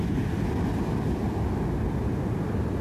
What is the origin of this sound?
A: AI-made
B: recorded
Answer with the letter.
B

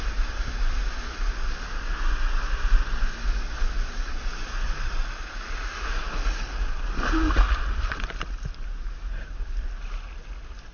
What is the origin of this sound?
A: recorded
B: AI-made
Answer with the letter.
A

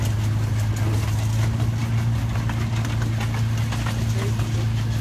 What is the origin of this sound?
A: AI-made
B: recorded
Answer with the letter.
B